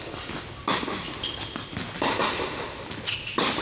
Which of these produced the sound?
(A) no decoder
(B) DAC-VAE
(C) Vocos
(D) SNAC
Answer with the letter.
A